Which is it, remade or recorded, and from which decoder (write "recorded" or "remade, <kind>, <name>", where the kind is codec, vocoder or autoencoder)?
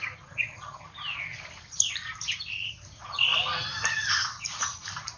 recorded